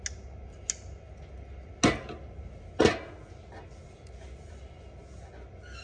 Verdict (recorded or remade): recorded